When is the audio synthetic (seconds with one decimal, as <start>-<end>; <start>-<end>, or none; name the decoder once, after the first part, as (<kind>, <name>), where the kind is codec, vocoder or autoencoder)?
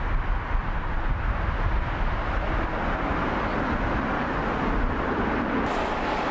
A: 0.6-1.1 (vocoder, BigVGAN v2); 4.1-5.1